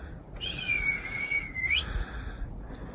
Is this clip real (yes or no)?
no